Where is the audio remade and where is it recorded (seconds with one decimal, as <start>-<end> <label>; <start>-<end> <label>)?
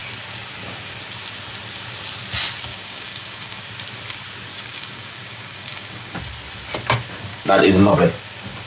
0.0-2.7 recorded; 2.7-3.6 remade; 3.6-4.5 recorded; 4.5-6.2 remade; 6.2-7.3 recorded; 7.3-7.9 remade; 7.9-8.7 recorded